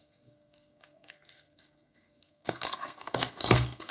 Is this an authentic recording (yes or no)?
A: no